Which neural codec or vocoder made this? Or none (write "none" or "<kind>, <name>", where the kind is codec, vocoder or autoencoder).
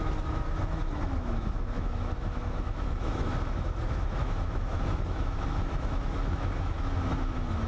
autoencoder, DAC-VAE